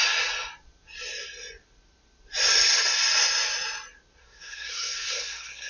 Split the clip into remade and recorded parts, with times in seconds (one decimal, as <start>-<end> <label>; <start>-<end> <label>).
0.0-4.2 recorded; 4.2-5.7 remade